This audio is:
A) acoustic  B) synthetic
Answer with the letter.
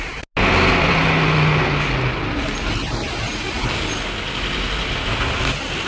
A